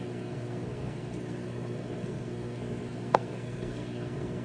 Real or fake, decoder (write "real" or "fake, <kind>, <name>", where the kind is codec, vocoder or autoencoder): fake, codec, SNAC